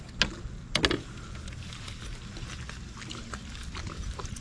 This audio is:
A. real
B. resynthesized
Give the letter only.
A